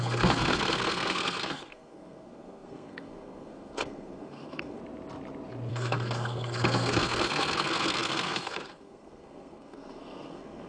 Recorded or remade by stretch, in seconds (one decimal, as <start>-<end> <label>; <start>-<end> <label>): 0.0-4.8 remade; 4.8-5.7 recorded; 5.7-10.7 remade